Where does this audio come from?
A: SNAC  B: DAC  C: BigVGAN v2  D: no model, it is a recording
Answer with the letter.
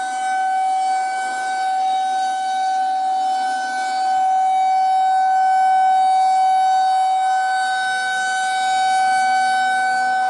D